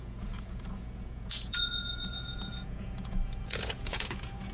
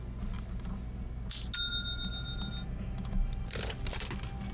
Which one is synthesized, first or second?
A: first